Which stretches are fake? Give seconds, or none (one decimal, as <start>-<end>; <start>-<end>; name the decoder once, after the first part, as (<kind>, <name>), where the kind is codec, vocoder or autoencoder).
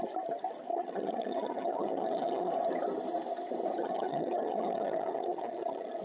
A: 0.7-2.5 (vocoder, HiFi-GAN); 3.8-6.0